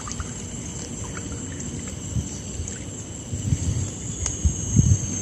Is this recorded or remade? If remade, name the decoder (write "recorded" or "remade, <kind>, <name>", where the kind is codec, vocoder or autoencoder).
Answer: remade, vocoder, BigVGAN v2